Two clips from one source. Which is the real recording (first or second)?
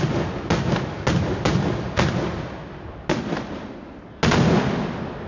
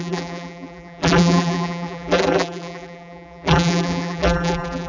first